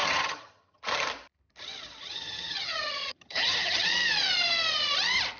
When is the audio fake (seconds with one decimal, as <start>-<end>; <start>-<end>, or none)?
0.0-0.8; 2.0-3.9